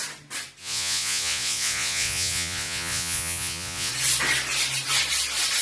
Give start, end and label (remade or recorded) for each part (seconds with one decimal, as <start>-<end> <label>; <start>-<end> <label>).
0.0-0.6 recorded; 0.6-3.9 remade; 3.9-5.6 recorded